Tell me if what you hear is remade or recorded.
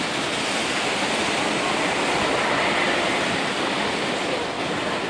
recorded